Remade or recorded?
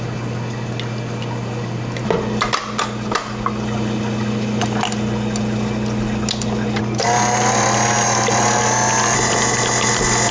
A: recorded